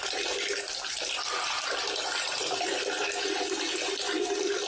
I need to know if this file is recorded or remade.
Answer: remade